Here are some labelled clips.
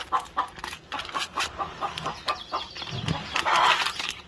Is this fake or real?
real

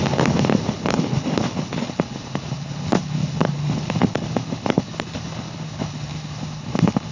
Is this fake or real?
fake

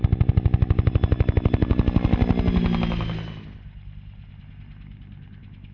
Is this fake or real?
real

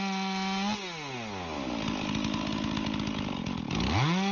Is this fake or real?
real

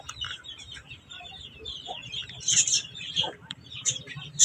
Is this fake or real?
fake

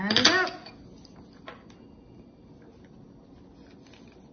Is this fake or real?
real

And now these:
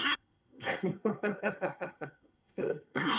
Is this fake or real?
fake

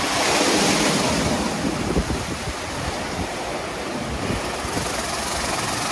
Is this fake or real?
real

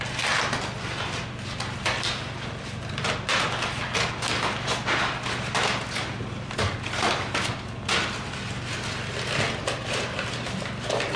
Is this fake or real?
real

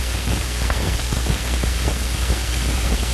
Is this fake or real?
fake